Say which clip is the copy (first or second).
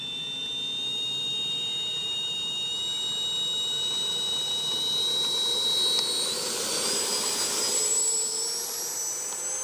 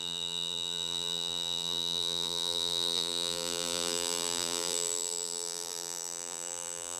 second